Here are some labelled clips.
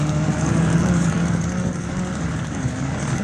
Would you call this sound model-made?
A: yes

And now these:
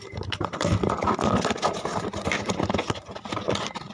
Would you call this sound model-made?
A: no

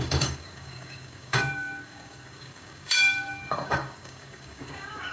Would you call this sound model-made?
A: yes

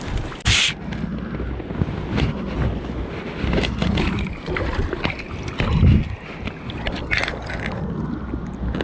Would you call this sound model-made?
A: no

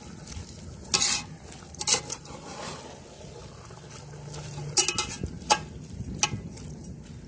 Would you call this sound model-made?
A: no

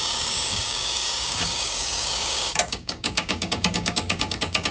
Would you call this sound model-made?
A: yes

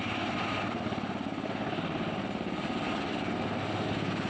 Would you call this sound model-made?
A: no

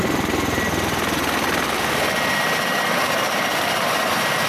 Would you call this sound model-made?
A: no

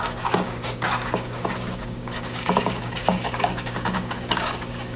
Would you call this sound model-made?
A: yes